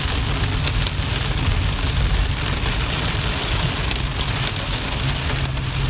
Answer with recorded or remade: recorded